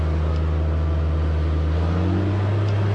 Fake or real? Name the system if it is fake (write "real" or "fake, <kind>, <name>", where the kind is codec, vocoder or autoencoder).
real